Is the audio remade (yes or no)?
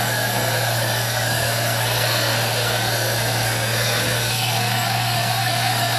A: yes